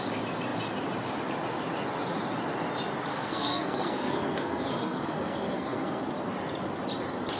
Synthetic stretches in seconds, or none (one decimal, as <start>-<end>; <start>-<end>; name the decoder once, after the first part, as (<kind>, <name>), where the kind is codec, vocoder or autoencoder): 3.1-6.0 (codec, SNAC)